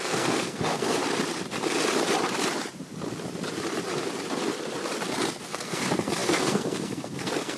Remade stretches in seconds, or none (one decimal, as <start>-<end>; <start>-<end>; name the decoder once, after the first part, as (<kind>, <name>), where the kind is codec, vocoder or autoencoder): 0.0-1.0 (codec, SNAC); 5.4-7.6